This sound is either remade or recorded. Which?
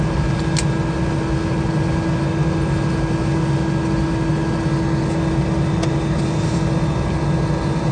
recorded